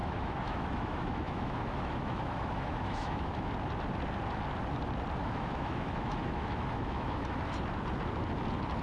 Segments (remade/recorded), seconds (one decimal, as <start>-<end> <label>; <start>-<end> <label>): 0.0-3.5 remade; 3.5-5.2 recorded; 5.2-7.5 remade; 7.5-8.8 recorded